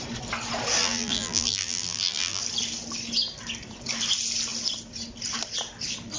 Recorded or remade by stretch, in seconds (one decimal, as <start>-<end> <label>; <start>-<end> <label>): 0.0-0.8 recorded; 0.8-2.4 remade; 2.4-6.2 recorded